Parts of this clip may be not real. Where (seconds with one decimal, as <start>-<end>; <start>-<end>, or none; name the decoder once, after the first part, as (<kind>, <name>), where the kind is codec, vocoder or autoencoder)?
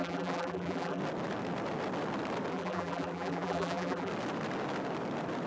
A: 0.0-1.0 (vocoder, BigVGAN v2); 2.5-4.1